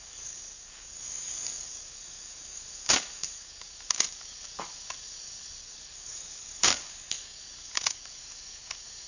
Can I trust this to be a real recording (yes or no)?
no